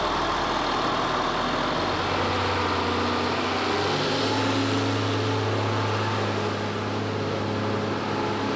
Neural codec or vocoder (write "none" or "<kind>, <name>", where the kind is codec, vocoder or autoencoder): none